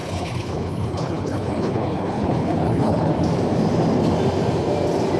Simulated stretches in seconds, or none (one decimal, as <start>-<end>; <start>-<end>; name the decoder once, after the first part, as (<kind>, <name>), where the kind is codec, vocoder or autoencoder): 0.0-3.1 (codec, HILCodec)

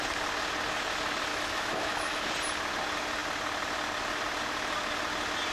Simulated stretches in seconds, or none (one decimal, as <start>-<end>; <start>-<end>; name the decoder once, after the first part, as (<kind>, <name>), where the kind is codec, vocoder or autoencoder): 1.3-2.3 (autoencoder, DAC-VAE)

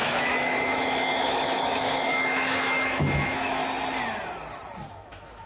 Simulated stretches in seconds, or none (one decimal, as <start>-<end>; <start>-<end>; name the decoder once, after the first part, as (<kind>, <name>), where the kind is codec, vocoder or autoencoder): 0.0-3.6 (autoencoder, DAC-VAE); 4.9-5.5

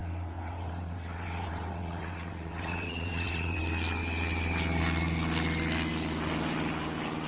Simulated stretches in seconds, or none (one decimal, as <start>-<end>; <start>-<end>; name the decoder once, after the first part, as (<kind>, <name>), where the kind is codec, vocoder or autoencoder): 0.0-3.6 (vocoder, WaveNeXt)

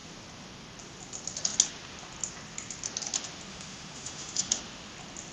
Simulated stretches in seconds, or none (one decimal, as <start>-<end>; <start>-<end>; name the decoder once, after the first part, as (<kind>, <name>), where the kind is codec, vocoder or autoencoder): 3.5-4.6 (autoencoder, DAC-VAE)

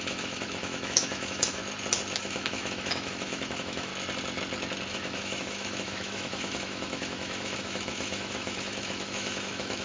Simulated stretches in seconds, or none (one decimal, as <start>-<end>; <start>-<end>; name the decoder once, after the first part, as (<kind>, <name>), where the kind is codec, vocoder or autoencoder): 0.0-1.6 (autoencoder, DAC-VAE); 2.2-3.9; 4.9-9.8